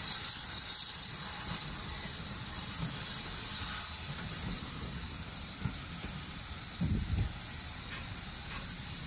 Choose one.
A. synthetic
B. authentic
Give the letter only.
B